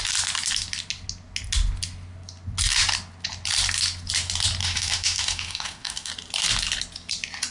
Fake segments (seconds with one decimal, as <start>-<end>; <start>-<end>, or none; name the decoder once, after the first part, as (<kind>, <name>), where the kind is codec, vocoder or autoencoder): 4.6-6.1 (autoencoder, DAC-VAE)